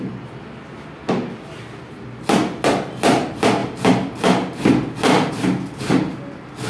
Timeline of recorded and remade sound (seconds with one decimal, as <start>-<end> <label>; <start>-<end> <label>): 0.0-6.7 recorded